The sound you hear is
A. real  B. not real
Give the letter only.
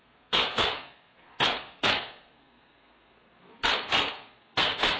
B